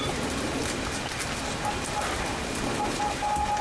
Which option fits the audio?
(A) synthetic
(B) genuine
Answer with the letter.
B